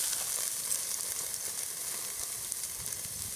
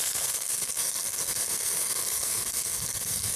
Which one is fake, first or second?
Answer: second